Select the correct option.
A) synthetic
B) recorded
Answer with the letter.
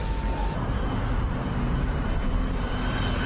B